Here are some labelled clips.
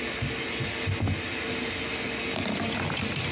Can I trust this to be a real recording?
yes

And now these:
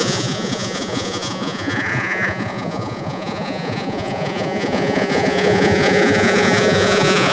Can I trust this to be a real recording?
no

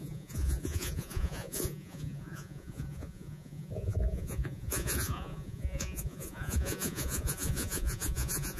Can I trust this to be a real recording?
no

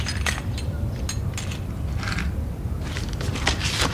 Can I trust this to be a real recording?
yes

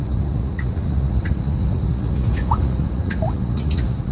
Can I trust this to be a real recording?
no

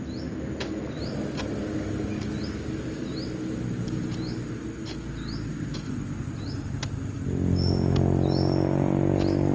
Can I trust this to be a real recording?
yes